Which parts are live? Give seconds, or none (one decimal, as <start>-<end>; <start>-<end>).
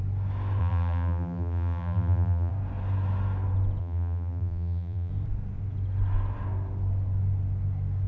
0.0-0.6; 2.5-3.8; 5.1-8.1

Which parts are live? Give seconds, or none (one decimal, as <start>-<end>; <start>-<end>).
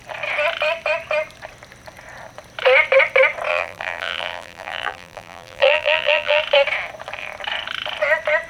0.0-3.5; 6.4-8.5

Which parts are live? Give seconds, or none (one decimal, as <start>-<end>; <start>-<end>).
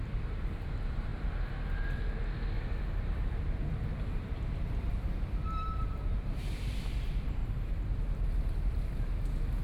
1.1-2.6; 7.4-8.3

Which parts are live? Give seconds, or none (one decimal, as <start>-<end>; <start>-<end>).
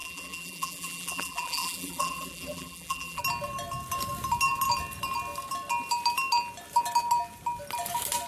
3.2-8.3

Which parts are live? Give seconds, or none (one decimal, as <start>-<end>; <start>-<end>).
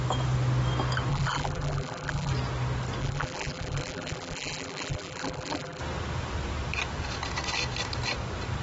0.0-1.1; 2.3-3.0; 5.8-8.6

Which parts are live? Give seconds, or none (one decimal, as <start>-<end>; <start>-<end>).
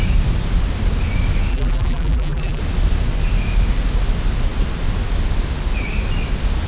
0.0-1.5; 2.6-6.7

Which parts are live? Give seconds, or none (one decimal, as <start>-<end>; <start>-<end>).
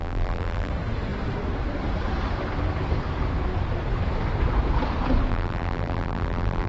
0.7-5.3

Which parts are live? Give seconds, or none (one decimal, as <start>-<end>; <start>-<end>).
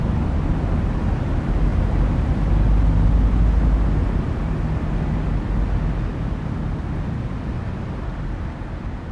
0.0-9.1